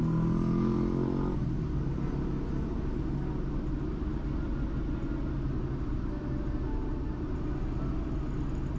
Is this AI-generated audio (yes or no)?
no